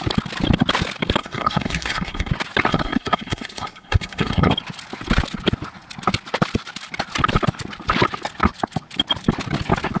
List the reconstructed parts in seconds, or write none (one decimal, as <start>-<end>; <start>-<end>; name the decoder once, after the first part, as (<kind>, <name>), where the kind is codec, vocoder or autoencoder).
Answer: 1.2-2.3 (codec, SNAC); 2.7-4.5